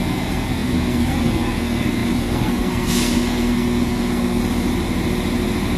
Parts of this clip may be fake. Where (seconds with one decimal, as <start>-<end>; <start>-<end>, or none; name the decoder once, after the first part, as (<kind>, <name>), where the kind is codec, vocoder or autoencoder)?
0.0-4.4 (codec, SNAC)